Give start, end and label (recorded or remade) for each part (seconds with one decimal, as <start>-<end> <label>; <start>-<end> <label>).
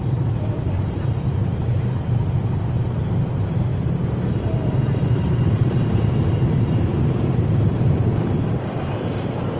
0.0-3.7 remade; 3.7-4.4 recorded; 4.4-9.6 remade